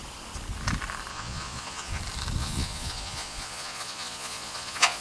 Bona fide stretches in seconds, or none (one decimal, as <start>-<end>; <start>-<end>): 0.0-1.1; 2.0-2.4